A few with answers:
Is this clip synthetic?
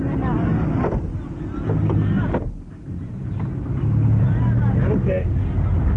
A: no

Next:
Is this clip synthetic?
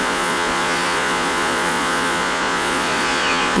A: yes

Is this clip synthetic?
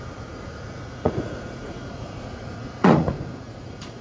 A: yes